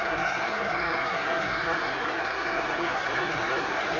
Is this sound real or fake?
fake